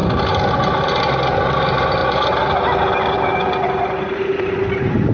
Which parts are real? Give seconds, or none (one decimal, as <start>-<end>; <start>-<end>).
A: 0.0-1.0; 2.0-3.0